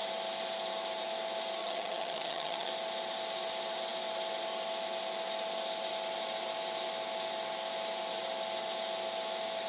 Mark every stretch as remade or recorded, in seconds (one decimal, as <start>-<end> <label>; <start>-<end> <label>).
0.0-1.6 recorded; 1.6-2.7 remade; 2.7-9.7 recorded